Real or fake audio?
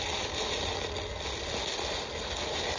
real